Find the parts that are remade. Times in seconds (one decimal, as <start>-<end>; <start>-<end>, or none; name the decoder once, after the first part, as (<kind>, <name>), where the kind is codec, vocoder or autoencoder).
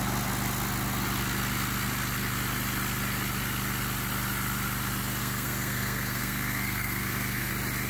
5.2-7.5 (codec, SNAC)